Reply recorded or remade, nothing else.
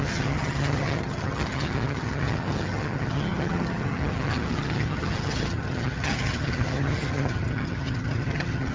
remade